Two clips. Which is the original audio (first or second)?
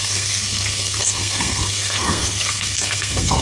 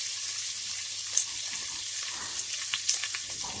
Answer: second